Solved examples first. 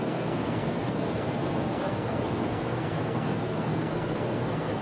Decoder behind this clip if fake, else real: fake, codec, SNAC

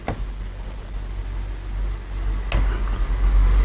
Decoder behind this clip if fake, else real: real